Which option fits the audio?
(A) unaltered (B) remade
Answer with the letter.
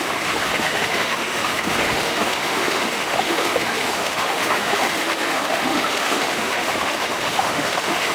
B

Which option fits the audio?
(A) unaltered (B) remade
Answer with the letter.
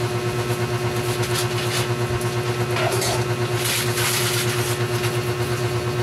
A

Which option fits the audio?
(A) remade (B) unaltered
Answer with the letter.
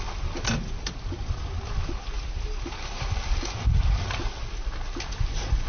B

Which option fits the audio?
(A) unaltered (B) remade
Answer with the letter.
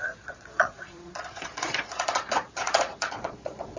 B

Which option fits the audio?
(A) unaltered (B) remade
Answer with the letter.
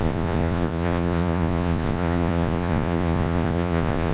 B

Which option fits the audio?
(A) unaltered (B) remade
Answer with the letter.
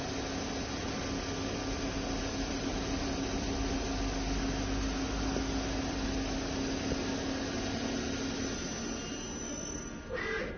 A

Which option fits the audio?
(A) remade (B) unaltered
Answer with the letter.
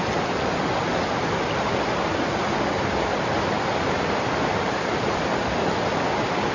B